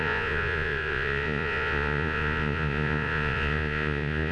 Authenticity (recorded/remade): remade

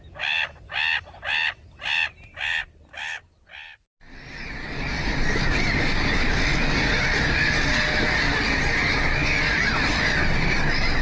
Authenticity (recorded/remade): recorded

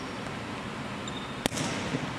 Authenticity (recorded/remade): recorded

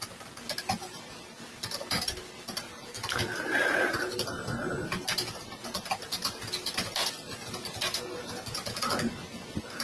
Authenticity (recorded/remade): recorded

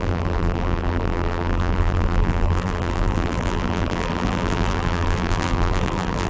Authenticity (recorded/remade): remade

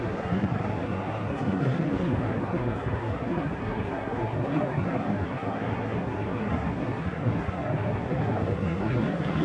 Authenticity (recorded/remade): remade